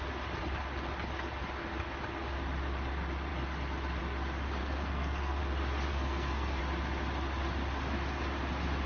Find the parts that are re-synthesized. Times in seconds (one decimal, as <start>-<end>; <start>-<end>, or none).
4.6-5.4; 5.9-6.6